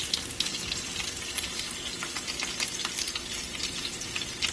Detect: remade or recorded recorded